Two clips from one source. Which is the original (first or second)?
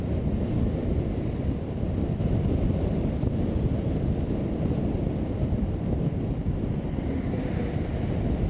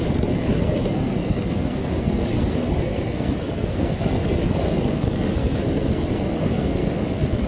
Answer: first